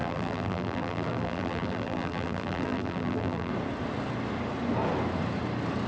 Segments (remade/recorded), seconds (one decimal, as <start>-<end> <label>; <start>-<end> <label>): 0.0-3.5 remade; 3.5-5.9 recorded